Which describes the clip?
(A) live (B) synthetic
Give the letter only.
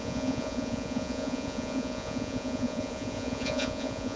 B